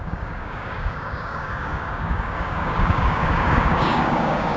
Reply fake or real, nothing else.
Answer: fake